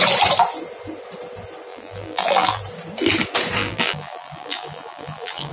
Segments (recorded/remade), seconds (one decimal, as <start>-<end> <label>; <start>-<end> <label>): 0.0-1.7 recorded; 1.7-2.6 remade; 2.6-3.6 recorded; 3.6-5.5 remade

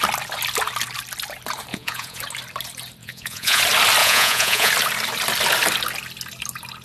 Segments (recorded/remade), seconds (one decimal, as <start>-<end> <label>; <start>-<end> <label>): 0.0-1.7 recorded; 1.7-2.2 remade; 2.2-3.0 recorded; 3.0-3.6 remade; 3.6-4.0 recorded; 4.0-4.7 remade; 4.7-6.8 recorded

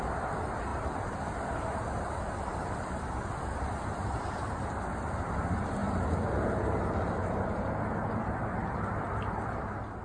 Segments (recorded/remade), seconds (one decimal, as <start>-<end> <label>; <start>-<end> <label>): 0.0-0.7 recorded; 0.7-5.3 remade; 5.3-10.0 recorded

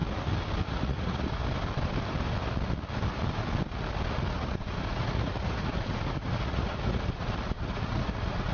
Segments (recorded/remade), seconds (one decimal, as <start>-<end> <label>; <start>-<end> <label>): 0.0-0.7 recorded; 0.7-1.4 remade; 1.4-4.3 recorded; 4.3-8.5 remade

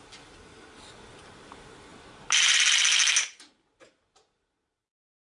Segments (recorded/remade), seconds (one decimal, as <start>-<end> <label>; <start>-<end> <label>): 0.0-5.2 recorded

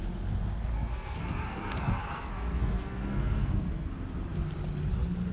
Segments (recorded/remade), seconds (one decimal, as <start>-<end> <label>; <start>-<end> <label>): 0.0-0.7 recorded; 0.7-3.9 remade; 3.9-5.3 recorded

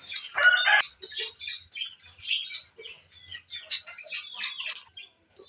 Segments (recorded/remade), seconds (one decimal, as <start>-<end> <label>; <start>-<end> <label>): 0.0-5.5 recorded